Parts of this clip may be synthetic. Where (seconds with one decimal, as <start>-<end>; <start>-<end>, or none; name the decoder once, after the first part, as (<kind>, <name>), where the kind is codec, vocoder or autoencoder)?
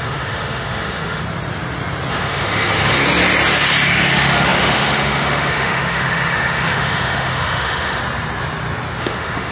0.0-1.2 (autoencoder, DAC-VAE); 2.1-3.0; 3.9-8.0; 9.0-9.5